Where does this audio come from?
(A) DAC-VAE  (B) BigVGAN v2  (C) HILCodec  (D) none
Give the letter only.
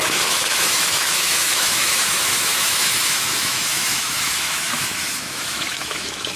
A